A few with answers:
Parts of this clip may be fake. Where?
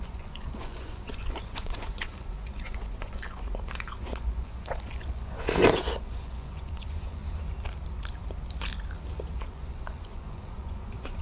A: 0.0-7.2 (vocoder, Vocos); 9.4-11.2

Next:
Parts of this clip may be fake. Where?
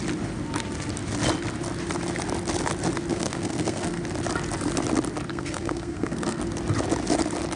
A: 3.1-4.0 (codec, SNAC); 5.3-6.4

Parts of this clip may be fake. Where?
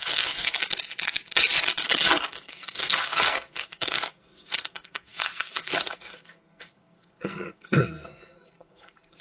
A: 0.0-0.6 (codec, SNAC); 2.2-9.2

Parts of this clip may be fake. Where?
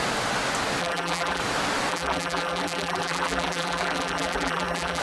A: 0.8-1.4 (vocoder, BigVGAN v2); 1.9-5.0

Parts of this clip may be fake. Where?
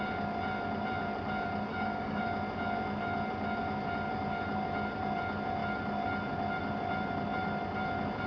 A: 1.7-2.2 (codec, DAC)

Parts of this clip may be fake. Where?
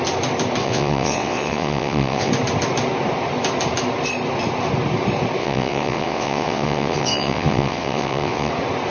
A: 0.6-2.3 (vocoder, WaveNeXt); 5.4-8.5